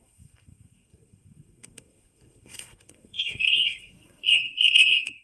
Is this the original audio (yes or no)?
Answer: no